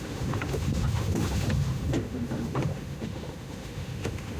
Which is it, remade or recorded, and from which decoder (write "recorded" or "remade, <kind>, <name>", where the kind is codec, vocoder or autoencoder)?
remade, autoencoder, DAC-VAE